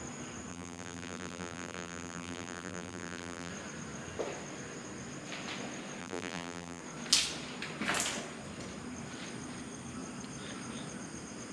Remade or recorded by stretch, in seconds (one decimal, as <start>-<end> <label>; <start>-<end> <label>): 0.0-0.5 recorded; 0.5-3.5 remade; 3.5-6.0 recorded; 6.0-6.8 remade; 6.8-11.5 recorded